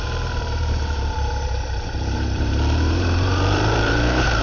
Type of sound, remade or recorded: remade